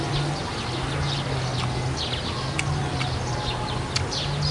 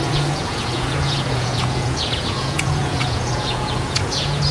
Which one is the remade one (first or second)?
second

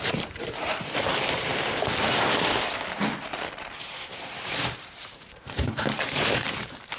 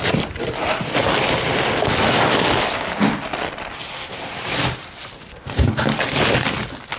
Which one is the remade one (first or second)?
first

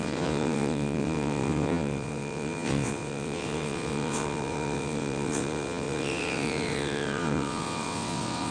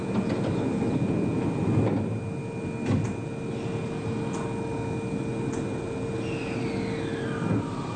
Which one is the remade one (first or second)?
first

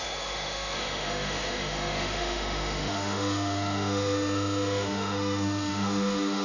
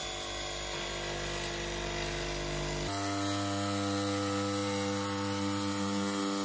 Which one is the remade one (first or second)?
first